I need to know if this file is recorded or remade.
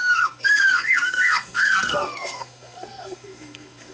remade